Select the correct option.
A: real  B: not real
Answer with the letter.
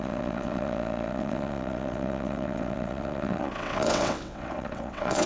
B